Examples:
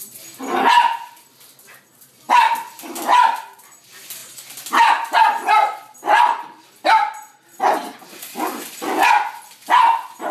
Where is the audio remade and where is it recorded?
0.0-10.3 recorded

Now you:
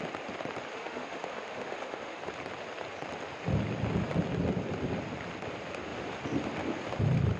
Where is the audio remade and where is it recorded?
0.0-0.8 recorded; 0.8-2.2 remade; 2.2-7.4 recorded